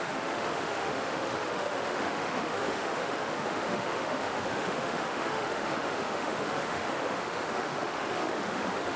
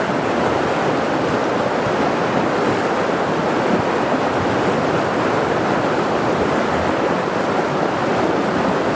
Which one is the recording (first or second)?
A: second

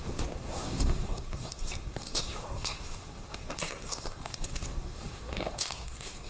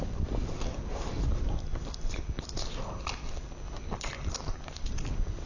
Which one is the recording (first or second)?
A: second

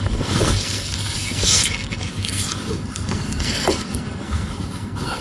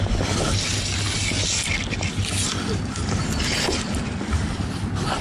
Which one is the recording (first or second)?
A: second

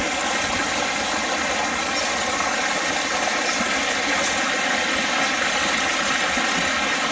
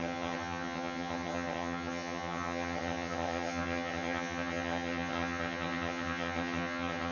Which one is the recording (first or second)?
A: first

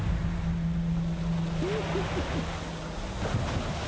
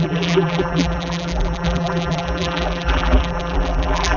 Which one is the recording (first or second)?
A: first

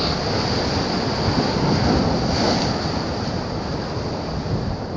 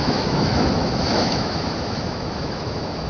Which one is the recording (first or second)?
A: first